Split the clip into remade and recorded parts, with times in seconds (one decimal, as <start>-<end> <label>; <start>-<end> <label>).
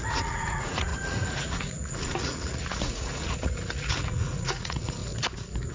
0.0-5.0 remade; 5.0-5.7 recorded